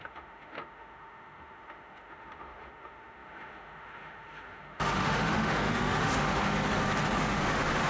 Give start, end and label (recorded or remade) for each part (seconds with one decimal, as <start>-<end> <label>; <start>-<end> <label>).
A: 0.0-6.4 remade; 6.4-7.2 recorded; 7.2-7.9 remade